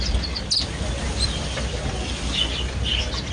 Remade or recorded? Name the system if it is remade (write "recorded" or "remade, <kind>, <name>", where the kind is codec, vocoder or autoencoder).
recorded